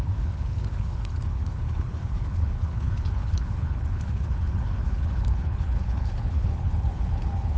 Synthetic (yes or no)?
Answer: yes